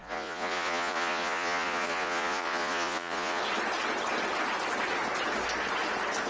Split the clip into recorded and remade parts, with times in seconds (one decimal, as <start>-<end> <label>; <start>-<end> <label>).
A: 0.0-3.4 remade; 3.4-6.3 recorded